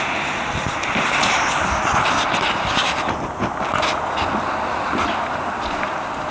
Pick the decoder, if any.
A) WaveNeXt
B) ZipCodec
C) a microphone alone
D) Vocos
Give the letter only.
C